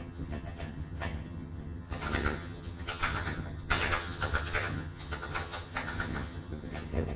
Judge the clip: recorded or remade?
remade